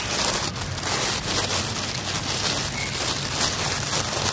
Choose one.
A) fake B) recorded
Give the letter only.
B